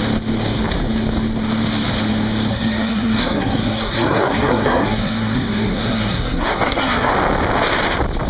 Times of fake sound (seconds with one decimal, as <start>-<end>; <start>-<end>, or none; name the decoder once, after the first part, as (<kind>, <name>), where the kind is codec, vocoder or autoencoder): 2.5-7.1 (codec, SNAC)